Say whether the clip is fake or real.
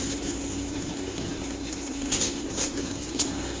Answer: fake